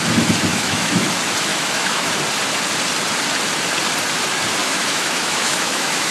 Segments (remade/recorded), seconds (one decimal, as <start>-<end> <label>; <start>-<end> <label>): 0.0-0.5 recorded; 0.5-1.1 remade; 1.1-1.5 recorded; 1.5-2.1 remade; 2.1-4.6 recorded; 4.6-6.1 remade